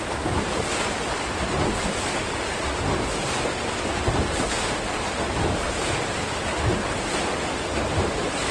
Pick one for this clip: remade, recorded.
recorded